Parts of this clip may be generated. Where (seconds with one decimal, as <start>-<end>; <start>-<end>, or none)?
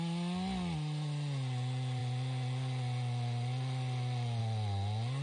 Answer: none